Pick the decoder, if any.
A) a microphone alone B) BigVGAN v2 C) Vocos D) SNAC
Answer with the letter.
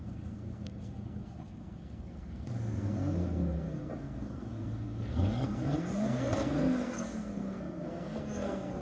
D